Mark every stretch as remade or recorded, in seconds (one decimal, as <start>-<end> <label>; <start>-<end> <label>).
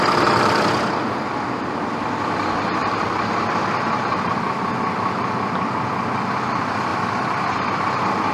0.0-2.8 recorded; 2.8-3.3 remade; 3.3-4.1 recorded; 4.1-4.6 remade; 4.6-8.3 recorded